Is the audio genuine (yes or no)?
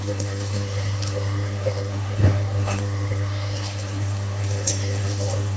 no